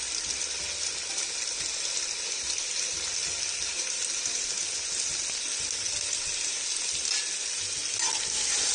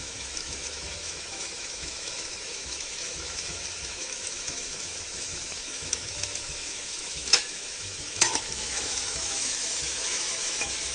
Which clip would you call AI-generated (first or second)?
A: second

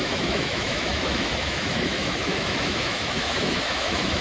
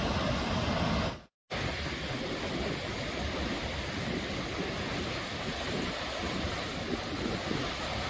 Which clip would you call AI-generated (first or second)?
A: first